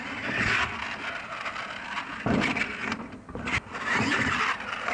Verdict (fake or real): real